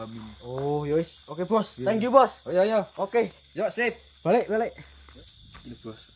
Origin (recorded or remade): recorded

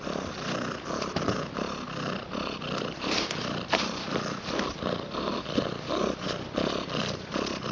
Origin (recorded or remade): recorded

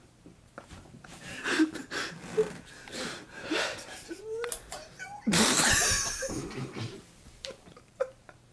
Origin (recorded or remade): remade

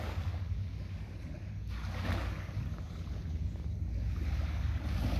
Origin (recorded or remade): remade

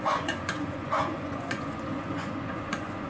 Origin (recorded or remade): remade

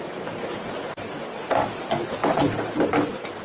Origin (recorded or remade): recorded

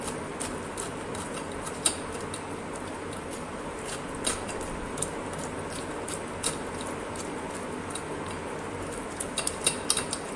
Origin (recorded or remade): recorded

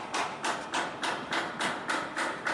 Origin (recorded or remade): recorded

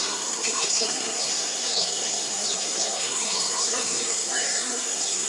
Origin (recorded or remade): remade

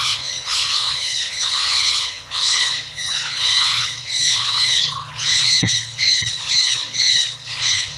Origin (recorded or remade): remade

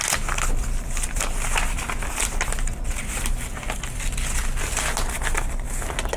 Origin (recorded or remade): recorded